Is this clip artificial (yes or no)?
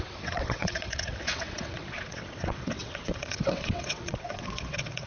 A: yes